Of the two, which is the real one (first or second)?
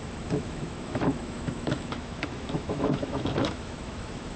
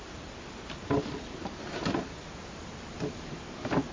second